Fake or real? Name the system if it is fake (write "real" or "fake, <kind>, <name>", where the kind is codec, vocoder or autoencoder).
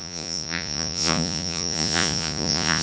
fake, vocoder, Vocos